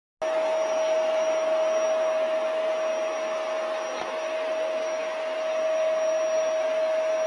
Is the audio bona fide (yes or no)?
yes